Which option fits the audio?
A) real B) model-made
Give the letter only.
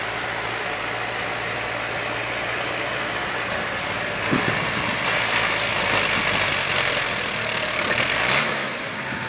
A